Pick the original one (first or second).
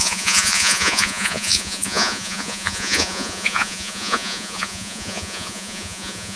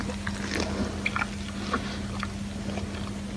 second